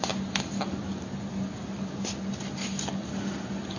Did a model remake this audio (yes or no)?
no